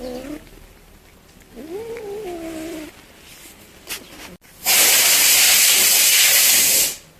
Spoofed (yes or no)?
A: no